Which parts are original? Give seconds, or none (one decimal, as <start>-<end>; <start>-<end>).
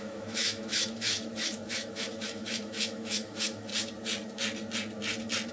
3.7-5.5